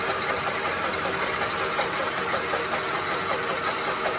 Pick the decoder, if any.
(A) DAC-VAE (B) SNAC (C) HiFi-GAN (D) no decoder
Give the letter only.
D